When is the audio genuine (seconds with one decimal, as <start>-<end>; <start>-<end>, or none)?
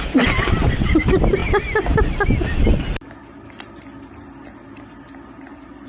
0.0-5.9